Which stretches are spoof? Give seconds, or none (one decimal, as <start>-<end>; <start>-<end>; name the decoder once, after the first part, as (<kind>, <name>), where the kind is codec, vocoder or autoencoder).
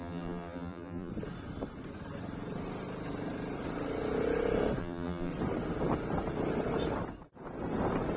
0.0-1.1 (vocoder, BigVGAN v2); 4.8-5.3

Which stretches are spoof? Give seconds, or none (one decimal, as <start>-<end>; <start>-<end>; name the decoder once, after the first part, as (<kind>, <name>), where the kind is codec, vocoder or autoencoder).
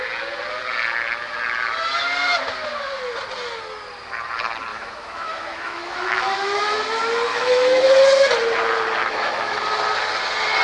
4.7-6.6 (autoencoder, DAC-VAE); 7.3-7.9; 9.0-9.6